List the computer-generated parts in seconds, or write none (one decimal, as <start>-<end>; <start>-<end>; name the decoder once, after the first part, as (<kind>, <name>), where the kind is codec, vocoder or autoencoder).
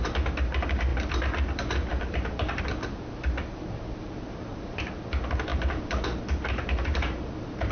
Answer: 0.9-2.6 (vocoder, BigVGAN v2); 4.5-5.0; 5.5-6.2